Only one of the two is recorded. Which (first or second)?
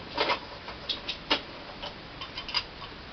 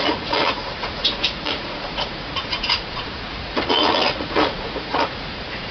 first